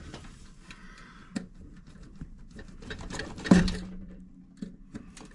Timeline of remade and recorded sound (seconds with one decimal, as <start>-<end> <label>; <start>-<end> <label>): 0.0-1.2 recorded; 1.2-4.4 remade; 4.4-5.3 recorded